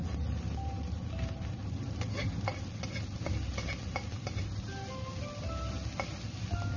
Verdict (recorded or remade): recorded